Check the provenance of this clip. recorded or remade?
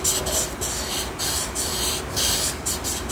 recorded